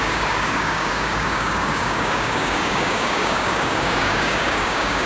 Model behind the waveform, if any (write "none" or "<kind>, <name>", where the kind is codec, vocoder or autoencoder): codec, DAC